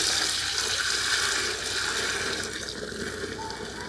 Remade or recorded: recorded